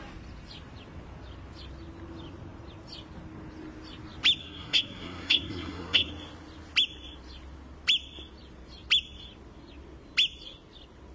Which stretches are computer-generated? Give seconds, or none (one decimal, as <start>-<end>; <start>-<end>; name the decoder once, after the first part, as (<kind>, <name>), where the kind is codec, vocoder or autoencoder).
4.4-6.1 (codec, SNAC)